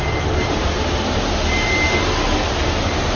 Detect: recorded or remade recorded